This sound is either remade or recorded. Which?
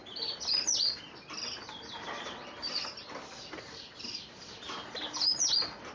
recorded